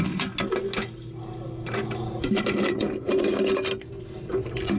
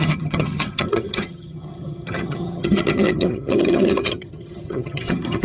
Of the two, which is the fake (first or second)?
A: second